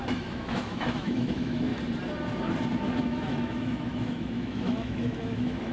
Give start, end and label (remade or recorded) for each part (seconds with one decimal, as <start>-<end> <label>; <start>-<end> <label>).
0.0-1.7 remade; 1.7-3.0 recorded; 3.0-5.7 remade